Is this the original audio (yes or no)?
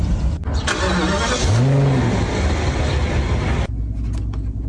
yes